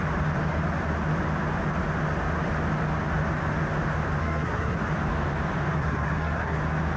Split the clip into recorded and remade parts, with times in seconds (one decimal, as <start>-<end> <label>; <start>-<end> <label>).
0.0-4.2 recorded; 4.2-4.8 remade; 4.8-5.8 recorded; 5.8-6.6 remade; 6.6-7.0 recorded